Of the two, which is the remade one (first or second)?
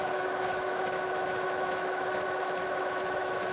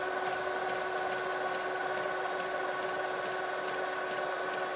first